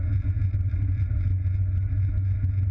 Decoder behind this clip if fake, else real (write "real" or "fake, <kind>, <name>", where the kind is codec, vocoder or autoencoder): real